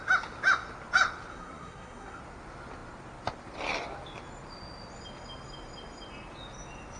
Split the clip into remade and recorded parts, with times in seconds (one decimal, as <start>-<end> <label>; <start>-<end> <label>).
0.0-1.3 recorded; 1.3-2.2 remade; 2.2-7.0 recorded